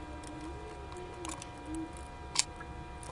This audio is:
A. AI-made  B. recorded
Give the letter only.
B